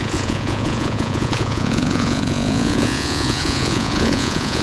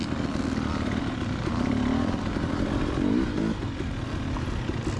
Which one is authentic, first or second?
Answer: second